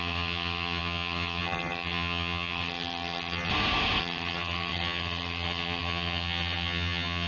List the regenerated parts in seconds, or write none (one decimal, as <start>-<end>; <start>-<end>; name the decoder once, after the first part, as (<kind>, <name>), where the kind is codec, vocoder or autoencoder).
0.0-3.5 (vocoder, HiFi-GAN); 4.0-7.3